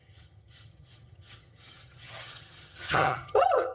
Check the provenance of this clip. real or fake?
fake